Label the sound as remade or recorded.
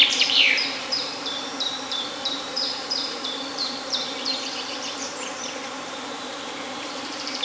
remade